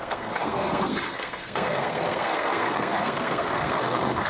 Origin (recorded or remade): remade